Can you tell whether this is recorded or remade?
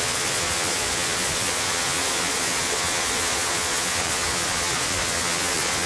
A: remade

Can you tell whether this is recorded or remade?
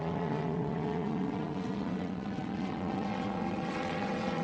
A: remade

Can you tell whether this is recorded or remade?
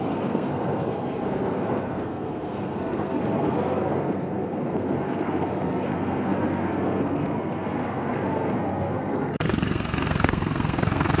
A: remade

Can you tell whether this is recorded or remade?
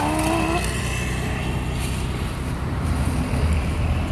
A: recorded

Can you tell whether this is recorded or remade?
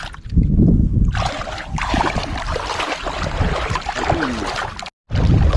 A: recorded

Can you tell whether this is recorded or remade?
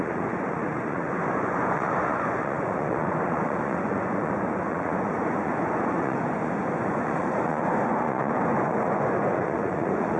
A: remade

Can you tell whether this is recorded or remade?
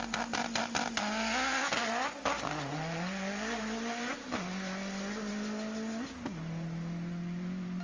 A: recorded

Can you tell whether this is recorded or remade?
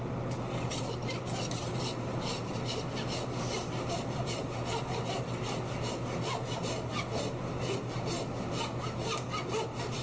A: recorded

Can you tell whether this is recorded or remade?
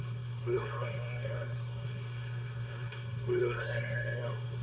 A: remade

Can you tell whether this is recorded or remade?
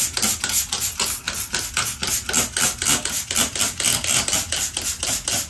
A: recorded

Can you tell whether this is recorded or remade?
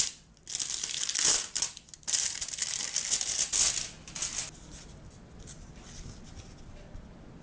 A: recorded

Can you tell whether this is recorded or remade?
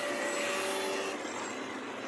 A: recorded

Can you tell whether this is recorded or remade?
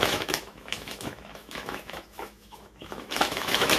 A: remade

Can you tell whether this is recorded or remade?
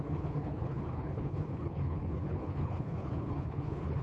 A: remade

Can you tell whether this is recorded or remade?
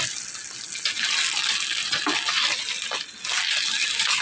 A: recorded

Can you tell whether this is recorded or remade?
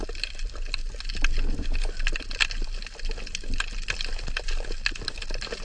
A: recorded